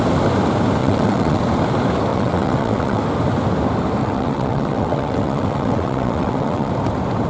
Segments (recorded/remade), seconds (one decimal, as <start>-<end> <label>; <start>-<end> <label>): 0.0-0.8 recorded; 0.8-1.4 remade; 1.4-2.1 recorded; 2.1-3.0 remade; 3.0-4.0 recorded; 4.0-6.7 remade; 6.7-7.3 recorded